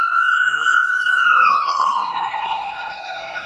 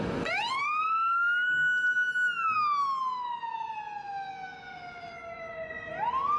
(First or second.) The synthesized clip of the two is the first